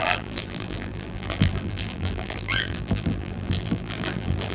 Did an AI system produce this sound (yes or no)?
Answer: yes